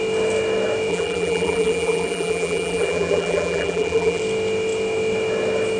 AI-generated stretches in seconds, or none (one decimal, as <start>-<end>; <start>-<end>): 0.9-4.2